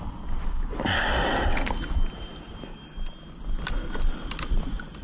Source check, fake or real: real